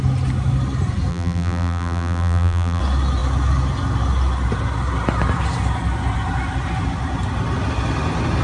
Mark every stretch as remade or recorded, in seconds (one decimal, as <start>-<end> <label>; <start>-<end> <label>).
0.0-1.1 recorded; 1.1-2.8 remade; 2.8-8.4 recorded